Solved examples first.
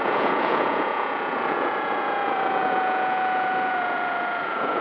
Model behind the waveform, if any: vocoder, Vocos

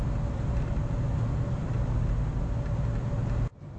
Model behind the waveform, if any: none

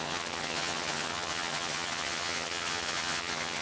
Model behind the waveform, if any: vocoder, HiFi-GAN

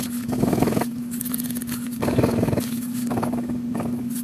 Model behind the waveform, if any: codec, DAC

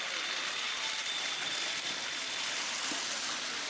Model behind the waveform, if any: none